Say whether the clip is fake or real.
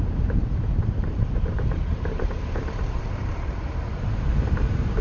fake